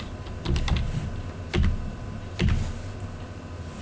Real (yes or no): yes